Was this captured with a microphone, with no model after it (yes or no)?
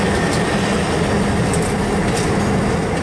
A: yes